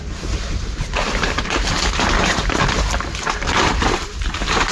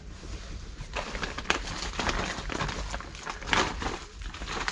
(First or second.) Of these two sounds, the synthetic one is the first